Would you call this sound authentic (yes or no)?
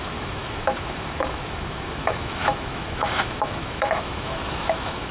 no